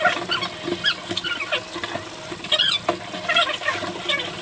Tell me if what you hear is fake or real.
real